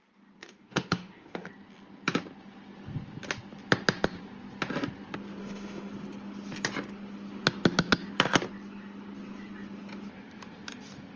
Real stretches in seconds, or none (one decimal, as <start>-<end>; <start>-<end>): 0.0-0.4; 1.5-5.4; 5.9-11.2